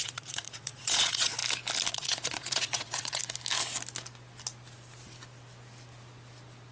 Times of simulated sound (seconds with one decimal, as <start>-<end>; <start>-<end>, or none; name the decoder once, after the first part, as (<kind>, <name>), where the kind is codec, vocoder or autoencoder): 0.0-1.4 (vocoder, Vocos); 1.9-3.2

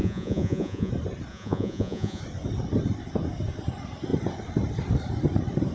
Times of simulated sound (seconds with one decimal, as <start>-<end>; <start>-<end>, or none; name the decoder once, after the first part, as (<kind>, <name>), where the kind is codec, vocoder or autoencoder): 0.0-0.9 (vocoder, Vocos); 1.3-2.2

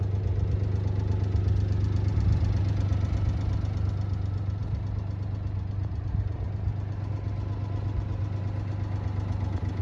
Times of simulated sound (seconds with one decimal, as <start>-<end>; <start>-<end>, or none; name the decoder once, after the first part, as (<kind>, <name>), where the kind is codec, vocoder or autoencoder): none